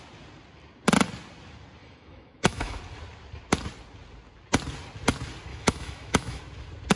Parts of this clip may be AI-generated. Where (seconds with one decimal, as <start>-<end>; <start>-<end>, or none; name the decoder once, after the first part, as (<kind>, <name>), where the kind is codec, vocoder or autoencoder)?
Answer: 1.8-2.8 (autoencoder, DAC-VAE); 5.5-6.4